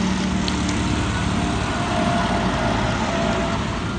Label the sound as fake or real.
real